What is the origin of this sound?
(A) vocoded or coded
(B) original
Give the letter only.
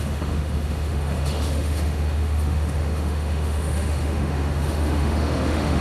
A